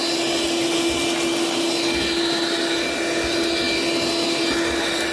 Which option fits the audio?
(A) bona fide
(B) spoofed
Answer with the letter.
A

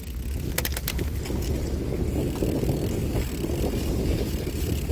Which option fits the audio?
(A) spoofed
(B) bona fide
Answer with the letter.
B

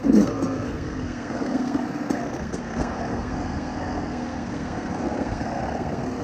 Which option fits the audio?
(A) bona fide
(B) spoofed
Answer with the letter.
B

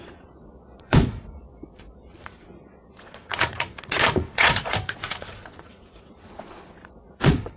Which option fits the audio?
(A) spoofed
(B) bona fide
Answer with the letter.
A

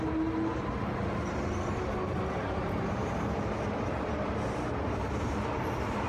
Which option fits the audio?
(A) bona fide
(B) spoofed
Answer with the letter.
A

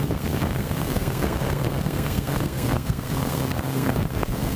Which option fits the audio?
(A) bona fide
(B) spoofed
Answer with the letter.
B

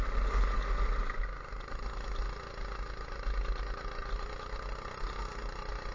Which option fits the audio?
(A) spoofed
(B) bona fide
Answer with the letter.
B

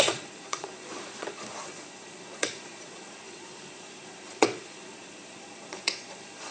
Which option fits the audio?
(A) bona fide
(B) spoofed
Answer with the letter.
B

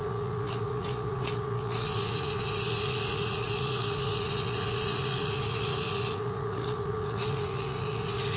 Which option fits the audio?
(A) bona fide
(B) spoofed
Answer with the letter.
B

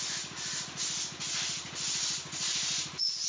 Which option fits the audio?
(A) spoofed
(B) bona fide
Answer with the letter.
B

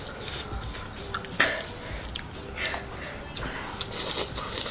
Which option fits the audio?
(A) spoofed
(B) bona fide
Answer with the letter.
B